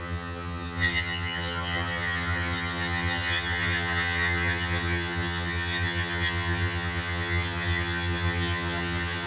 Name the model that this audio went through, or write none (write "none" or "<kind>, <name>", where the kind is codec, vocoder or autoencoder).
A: vocoder, HiFi-GAN